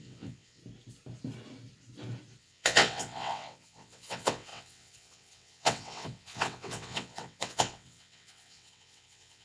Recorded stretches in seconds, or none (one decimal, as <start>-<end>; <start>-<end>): 0.6-2.4